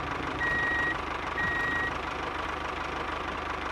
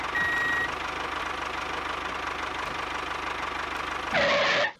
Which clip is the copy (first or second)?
first